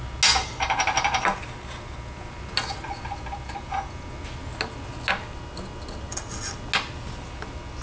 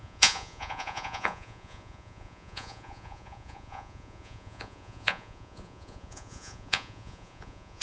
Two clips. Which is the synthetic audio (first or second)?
second